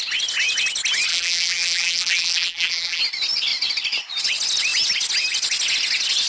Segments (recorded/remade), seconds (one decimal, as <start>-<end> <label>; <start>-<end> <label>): 0.0-1.1 recorded; 1.1-3.0 remade; 3.0-6.3 recorded